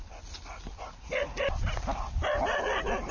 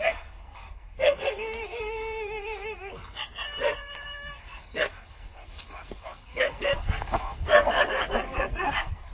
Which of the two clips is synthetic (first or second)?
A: second